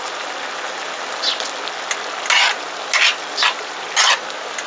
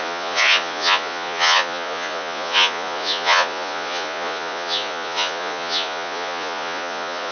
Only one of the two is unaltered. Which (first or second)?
first